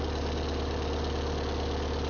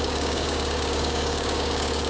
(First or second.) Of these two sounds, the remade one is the second